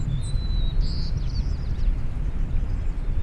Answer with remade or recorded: recorded